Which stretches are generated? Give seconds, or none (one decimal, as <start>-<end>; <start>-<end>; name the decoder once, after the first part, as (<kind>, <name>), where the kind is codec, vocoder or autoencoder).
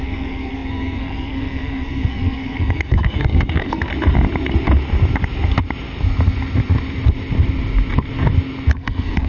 0.0-3.9 (codec, SNAC); 8.7-9.3